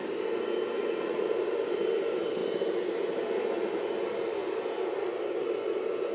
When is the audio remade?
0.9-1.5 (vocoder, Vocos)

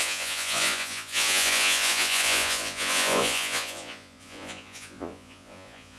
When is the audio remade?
0.0-6.0 (vocoder, Vocos)

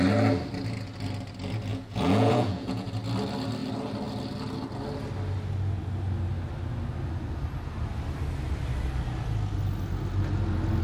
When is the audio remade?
1.7-2.9 (vocoder, Vocos)

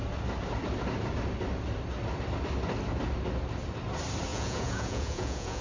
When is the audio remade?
4.3-5.6 (vocoder, Vocos)

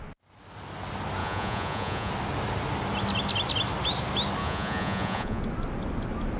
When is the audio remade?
1.2-2.1 (vocoder, Vocos); 4.4-5.4

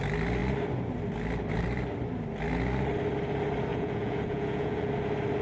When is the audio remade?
3.7-4.9 (vocoder, Vocos)